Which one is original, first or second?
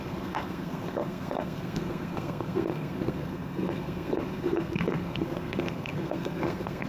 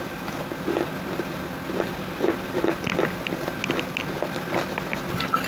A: second